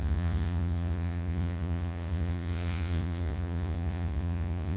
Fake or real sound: fake